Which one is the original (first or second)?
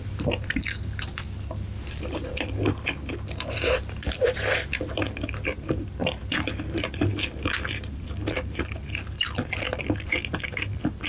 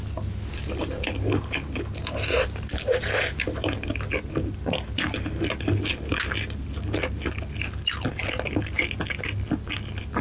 second